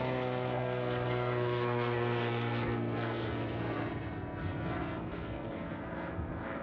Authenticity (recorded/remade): remade